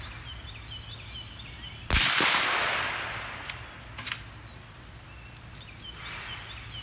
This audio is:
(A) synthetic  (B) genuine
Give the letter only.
B